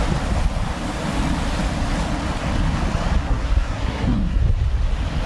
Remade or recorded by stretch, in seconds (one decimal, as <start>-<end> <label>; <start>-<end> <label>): 0.0-3.2 recorded; 3.2-4.4 remade; 4.4-5.3 recorded